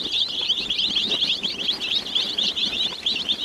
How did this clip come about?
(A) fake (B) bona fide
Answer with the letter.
A